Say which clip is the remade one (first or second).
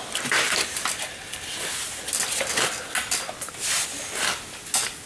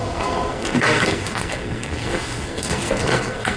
second